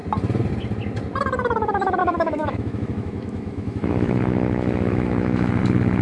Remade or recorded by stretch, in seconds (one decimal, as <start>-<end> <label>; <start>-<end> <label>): 0.0-2.0 recorded; 2.0-5.6 remade; 5.6-6.0 recorded